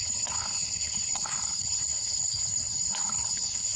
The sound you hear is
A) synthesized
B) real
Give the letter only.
A